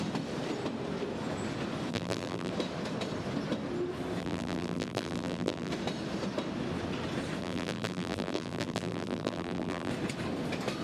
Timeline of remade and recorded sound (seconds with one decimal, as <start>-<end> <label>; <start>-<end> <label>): 0.0-1.9 recorded; 1.9-2.5 remade; 2.5-4.2 recorded; 4.2-5.7 remade; 5.7-7.4 recorded; 7.4-9.9 remade; 9.9-10.8 recorded